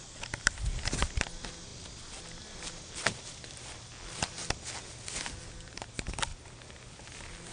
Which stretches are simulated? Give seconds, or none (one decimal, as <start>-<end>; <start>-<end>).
none